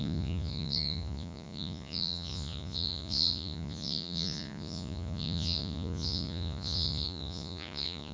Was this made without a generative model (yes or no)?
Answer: no